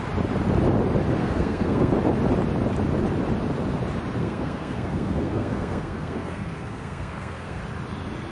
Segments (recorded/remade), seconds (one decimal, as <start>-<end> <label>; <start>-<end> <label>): 0.0-1.2 recorded; 1.2-1.9 remade; 1.9-4.2 recorded; 4.2-7.6 remade; 7.6-8.3 recorded